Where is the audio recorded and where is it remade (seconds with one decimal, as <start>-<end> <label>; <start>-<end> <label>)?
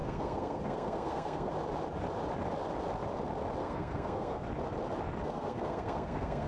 0.0-1.5 remade; 1.5-3.6 recorded; 3.6-4.4 remade; 4.4-5.2 recorded; 5.2-6.5 remade